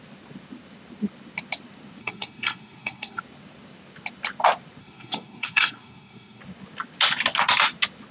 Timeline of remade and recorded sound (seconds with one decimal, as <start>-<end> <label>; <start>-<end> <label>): 0.0-2.0 recorded; 2.0-3.2 remade; 3.2-4.8 recorded; 4.8-6.4 remade; 6.4-8.1 recorded